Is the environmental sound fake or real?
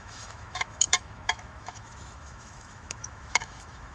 fake